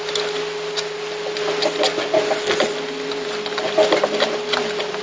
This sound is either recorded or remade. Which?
recorded